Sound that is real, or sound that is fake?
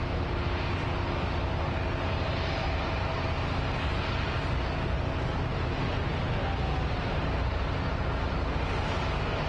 real